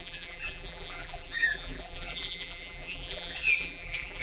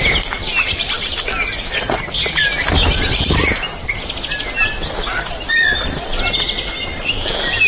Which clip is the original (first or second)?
second